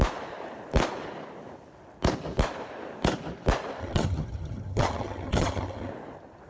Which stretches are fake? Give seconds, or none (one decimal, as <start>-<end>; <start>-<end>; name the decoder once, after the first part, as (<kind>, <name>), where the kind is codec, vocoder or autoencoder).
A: 3.8-5.9 (vocoder, HiFi-GAN)

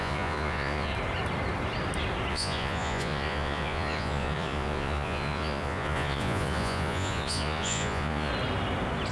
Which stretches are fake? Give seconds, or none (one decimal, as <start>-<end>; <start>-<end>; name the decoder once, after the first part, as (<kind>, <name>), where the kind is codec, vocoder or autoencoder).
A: 0.0-0.9 (vocoder, Vocos); 2.3-8.3

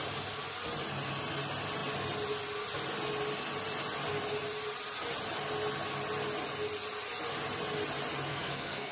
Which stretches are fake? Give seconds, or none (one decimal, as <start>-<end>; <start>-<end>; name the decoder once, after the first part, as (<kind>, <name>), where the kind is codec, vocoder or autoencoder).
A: 8.3-8.9 (codec, SNAC)